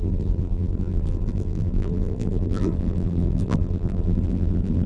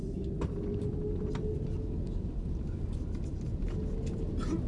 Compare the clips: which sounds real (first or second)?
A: second